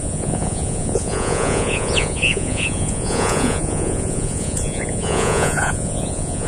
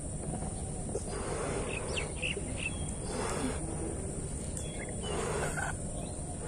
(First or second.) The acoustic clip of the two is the second